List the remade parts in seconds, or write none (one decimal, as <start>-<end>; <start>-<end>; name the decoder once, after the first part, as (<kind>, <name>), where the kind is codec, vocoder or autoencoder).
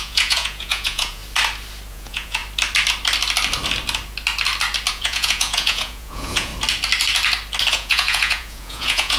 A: 0.0-1.2 (vocoder, Vocos); 1.9-2.4; 4.9-6.5; 7.7-9.2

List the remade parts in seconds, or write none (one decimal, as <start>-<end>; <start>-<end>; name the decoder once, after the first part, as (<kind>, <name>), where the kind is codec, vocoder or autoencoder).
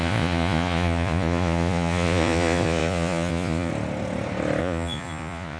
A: 0.0-3.7 (vocoder, Vocos); 4.6-5.6